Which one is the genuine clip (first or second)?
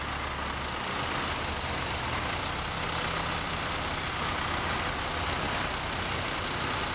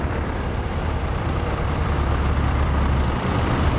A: first